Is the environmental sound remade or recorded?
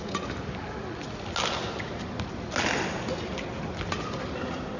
recorded